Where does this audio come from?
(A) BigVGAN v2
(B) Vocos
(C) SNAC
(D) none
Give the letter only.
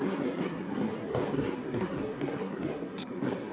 C